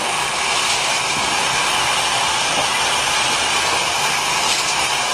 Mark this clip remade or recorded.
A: remade